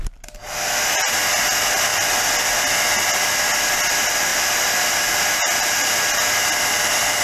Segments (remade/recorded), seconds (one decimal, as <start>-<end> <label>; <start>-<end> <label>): 0.0-7.2 recorded